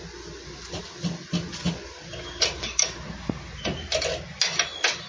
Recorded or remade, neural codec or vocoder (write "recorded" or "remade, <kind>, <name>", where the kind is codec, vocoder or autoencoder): recorded